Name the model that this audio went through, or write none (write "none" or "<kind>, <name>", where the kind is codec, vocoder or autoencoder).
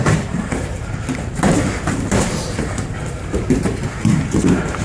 vocoder, BigVGAN v2